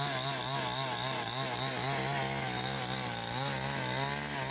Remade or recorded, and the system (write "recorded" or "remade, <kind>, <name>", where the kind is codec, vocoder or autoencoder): recorded